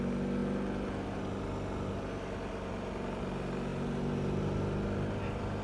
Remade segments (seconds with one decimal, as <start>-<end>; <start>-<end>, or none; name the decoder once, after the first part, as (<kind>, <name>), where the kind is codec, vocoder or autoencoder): none